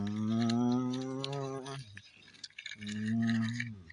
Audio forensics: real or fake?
real